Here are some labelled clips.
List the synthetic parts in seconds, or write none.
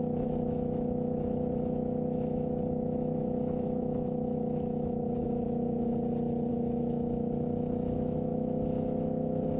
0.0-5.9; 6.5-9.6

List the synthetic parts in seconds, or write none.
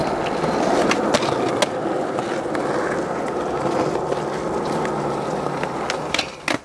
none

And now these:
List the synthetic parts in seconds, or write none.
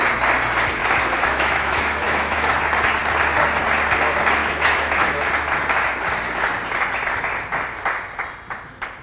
0.8-2.6; 4.4-5.3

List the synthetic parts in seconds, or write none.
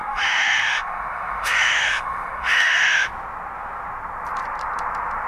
0.0-3.1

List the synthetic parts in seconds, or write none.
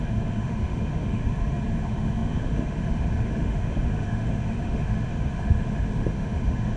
0.0-1.2; 1.7-6.8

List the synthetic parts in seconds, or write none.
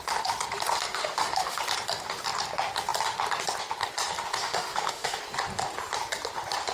1.0-1.6; 4.4-5.2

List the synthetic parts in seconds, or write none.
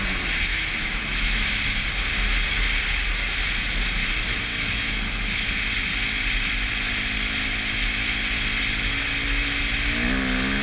0.5-1.5; 4.5-5.5